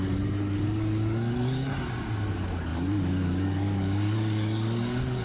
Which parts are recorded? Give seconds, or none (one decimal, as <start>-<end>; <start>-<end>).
1.7-2.3